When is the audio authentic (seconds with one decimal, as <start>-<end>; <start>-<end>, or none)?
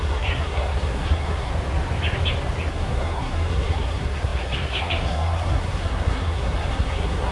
1.5-2.7